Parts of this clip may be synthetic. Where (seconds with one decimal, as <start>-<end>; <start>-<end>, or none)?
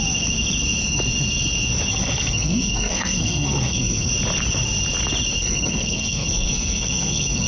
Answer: 1.9-4.1; 5.4-7.5